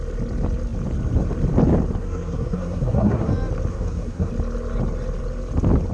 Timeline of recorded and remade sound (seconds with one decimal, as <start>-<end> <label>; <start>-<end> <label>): 0.0-2.0 recorded; 2.0-3.3 remade; 3.3-3.7 recorded; 3.7-4.3 remade; 4.3-5.9 recorded